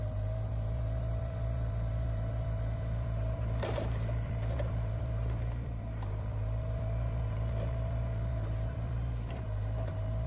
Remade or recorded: remade